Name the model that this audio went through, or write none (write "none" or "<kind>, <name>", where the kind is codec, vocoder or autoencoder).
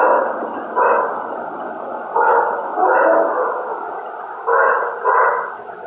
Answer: none